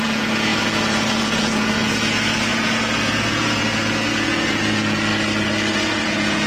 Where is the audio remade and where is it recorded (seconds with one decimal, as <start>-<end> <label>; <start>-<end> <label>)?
0.0-5.1 remade; 5.1-5.7 recorded; 5.7-6.5 remade